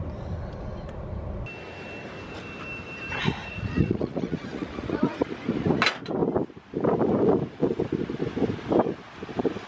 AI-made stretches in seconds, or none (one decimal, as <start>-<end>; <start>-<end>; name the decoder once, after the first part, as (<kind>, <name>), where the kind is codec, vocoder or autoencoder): 3.2-5.8 (vocoder, Vocos)